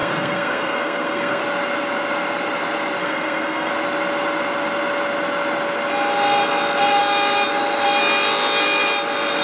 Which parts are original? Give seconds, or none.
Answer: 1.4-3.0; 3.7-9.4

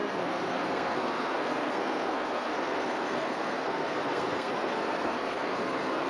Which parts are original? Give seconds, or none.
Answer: none

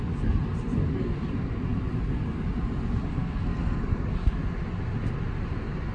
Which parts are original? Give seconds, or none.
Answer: 0.0-3.1; 3.9-5.9

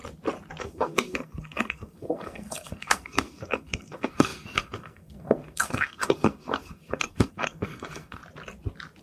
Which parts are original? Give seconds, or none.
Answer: 0.0-0.6; 8.2-9.0

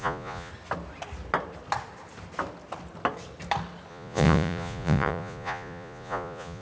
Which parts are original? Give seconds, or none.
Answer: 0.5-3.9

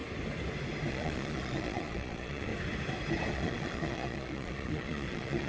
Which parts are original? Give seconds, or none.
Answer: 0.0-0.9; 2.5-3.3

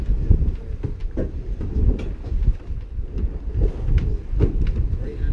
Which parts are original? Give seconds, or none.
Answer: 0.0-5.3

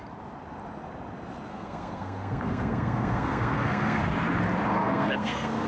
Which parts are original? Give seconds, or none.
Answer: 0.0-1.5; 4.0-4.8